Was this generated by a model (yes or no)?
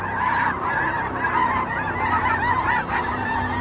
yes